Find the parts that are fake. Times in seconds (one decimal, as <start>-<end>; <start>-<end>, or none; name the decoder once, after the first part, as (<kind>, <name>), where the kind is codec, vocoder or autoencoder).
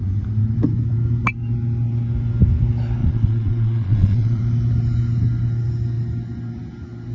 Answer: 3.0-4.4 (vocoder, Vocos)